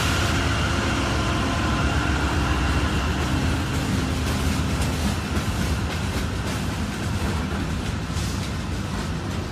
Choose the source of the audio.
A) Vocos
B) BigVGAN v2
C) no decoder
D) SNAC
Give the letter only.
C